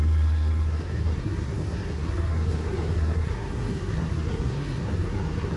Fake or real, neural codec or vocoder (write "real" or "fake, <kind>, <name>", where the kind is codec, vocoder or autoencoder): fake, codec, SNAC